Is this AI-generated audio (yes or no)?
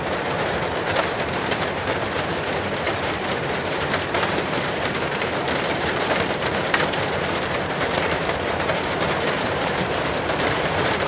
yes